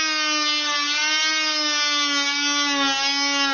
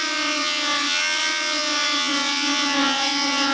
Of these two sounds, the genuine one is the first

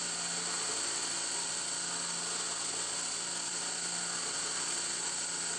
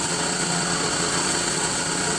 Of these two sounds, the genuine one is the first